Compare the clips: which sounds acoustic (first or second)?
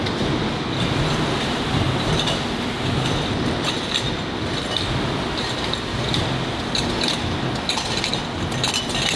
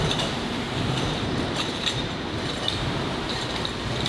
first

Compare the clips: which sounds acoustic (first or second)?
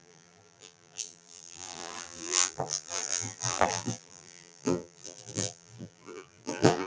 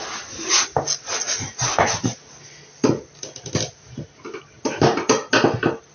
second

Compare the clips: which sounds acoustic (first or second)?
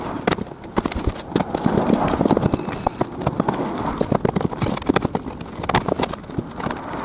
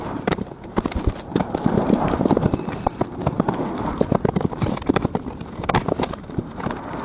first